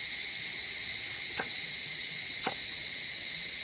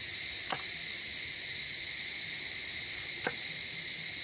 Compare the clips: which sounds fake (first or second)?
first